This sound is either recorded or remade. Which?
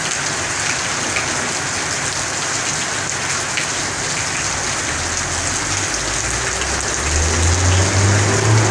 recorded